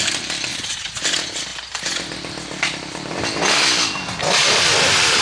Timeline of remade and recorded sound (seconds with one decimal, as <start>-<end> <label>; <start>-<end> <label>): 0.0-0.5 recorded; 0.5-1.0 remade; 1.0-5.2 recorded